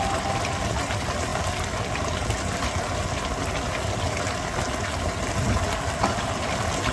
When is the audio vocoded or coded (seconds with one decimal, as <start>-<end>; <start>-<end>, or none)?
none